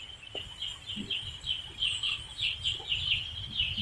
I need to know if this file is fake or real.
real